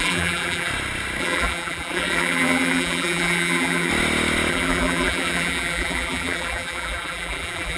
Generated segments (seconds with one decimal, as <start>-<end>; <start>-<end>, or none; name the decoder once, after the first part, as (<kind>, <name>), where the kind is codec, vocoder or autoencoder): 0.0-0.7 (vocoder, BigVGAN v2); 1.2-3.9; 4.5-7.8